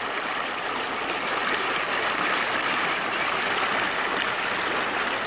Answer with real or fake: real